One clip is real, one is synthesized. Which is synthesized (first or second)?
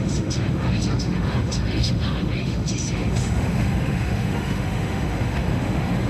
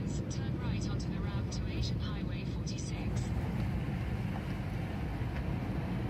first